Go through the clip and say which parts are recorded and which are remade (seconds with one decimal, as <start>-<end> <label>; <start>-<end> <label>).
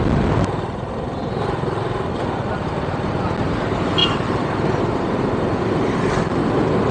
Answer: 0.0-6.9 recorded